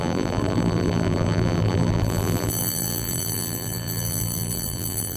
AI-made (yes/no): yes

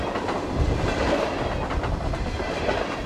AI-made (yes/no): no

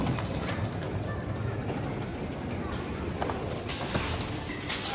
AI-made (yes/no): yes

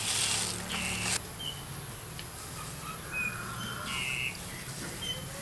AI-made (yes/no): no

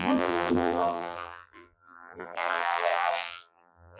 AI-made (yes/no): yes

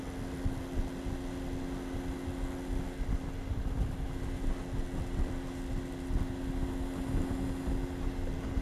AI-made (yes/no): no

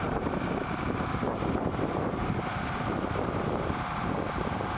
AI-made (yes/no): yes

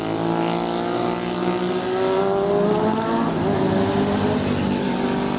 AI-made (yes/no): no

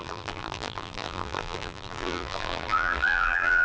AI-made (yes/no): yes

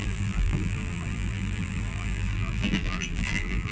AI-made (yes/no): yes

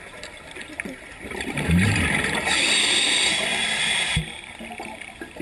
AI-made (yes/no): yes